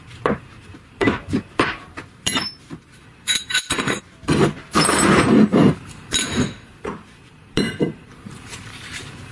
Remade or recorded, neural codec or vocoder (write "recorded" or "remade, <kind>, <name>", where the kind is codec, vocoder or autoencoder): remade, vocoder, BigVGAN v2